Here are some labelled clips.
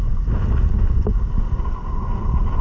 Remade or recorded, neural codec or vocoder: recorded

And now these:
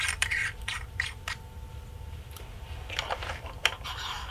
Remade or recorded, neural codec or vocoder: remade, vocoder, BigVGAN v2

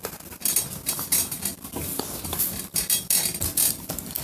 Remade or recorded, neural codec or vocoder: recorded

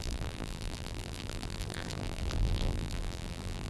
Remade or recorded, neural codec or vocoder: remade, vocoder, BigVGAN v2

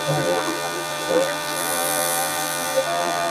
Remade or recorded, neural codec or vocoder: remade, vocoder, BigVGAN v2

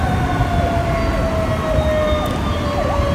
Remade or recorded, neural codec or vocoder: recorded